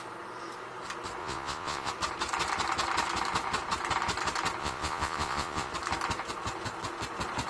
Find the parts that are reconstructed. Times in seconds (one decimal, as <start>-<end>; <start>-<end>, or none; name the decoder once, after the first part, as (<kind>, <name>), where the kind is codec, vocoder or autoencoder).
1.2-1.9 (vocoder, Vocos); 4.6-5.7